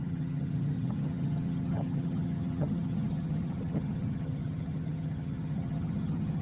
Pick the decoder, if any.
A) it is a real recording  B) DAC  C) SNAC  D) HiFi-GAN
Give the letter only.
D